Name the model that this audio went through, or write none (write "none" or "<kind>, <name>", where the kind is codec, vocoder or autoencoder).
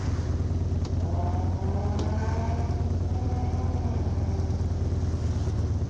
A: none